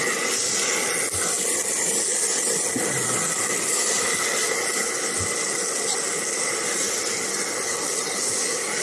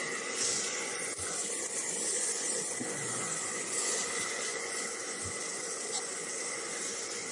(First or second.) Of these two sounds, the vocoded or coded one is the second